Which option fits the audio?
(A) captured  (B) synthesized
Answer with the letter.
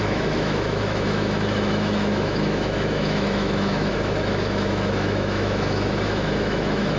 B